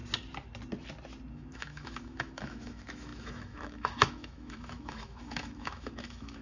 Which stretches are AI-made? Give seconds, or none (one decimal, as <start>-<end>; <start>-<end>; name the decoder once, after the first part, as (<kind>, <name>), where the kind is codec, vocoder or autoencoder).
1.3-6.4 (autoencoder, DAC-VAE)